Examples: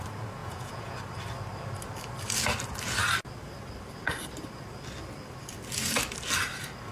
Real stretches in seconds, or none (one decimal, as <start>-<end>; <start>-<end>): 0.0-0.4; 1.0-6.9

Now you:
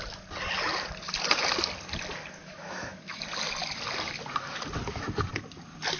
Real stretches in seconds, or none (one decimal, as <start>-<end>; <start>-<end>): 0.0-2.4; 3.2-6.0

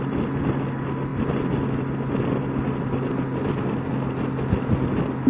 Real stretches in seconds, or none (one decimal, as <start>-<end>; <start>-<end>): 0.0-5.3

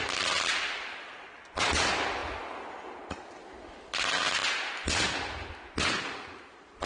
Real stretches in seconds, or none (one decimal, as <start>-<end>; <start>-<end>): 0.0-6.9

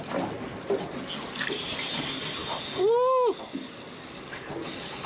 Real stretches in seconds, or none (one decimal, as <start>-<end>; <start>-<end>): 0.0-5.1

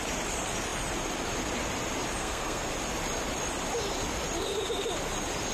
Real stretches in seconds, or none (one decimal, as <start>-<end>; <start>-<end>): 0.0-2.2; 2.7-5.5

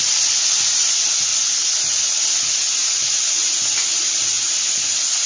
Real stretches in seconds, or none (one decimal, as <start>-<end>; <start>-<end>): 0.0-5.3

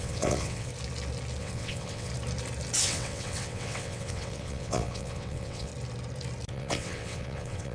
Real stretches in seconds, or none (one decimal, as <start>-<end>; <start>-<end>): 0.7-1.4; 2.1-2.8; 5.7-6.5